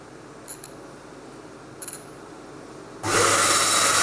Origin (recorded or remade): recorded